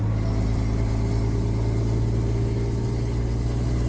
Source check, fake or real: real